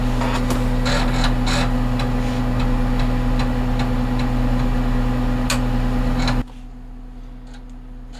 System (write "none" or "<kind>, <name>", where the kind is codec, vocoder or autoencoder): none